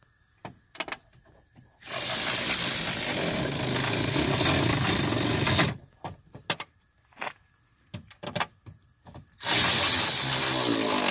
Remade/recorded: recorded